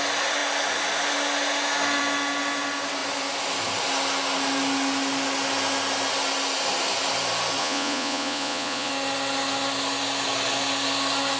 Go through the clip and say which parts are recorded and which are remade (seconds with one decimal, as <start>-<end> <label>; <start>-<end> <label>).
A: 0.0-7.6 recorded; 7.6-8.9 remade; 8.9-11.4 recorded